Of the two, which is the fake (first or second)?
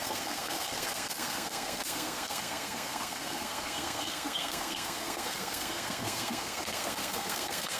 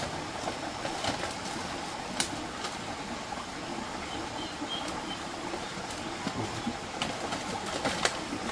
first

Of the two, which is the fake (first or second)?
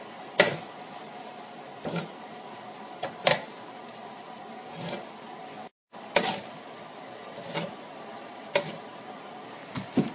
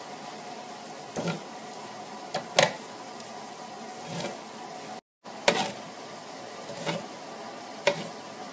first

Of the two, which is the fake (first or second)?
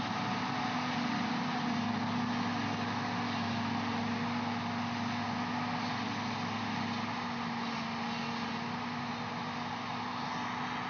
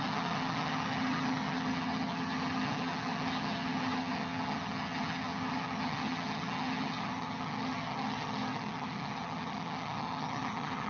second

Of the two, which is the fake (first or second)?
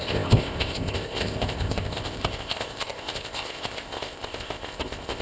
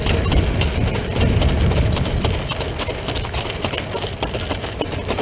first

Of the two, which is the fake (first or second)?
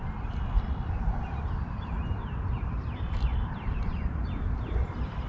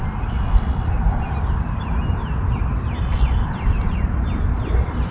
first